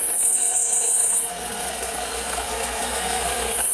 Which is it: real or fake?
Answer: fake